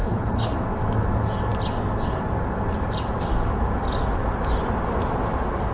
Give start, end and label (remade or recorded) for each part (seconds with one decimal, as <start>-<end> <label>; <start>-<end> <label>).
0.0-0.5 remade; 0.5-5.7 recorded